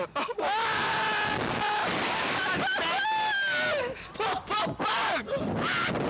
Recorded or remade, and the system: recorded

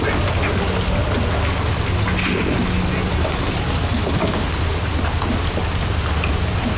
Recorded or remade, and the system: recorded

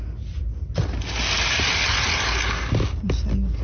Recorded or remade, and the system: recorded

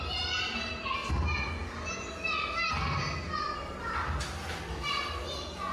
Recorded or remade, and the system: recorded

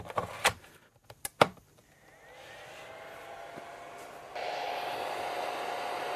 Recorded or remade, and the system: recorded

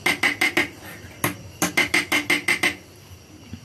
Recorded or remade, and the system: recorded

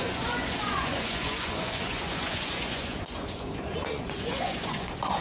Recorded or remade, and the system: remade, vocoder, Vocos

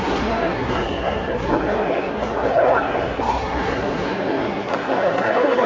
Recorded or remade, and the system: remade, codec, SNAC